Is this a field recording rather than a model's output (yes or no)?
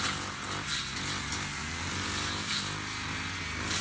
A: yes